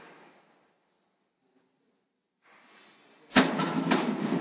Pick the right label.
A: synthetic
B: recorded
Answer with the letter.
B